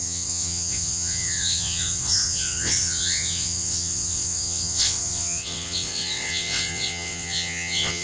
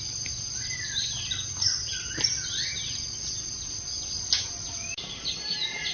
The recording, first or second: second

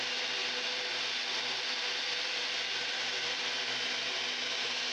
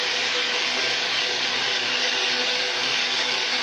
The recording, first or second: first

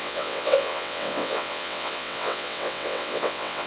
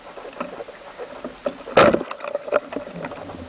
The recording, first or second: second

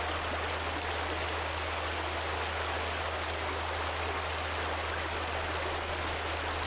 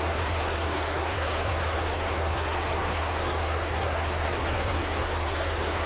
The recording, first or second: first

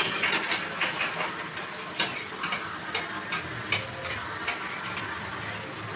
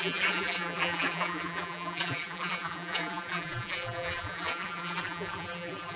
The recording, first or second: first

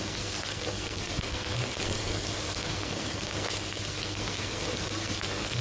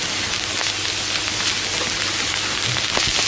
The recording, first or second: second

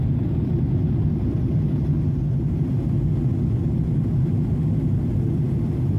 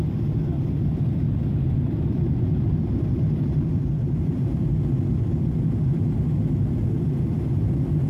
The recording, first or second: first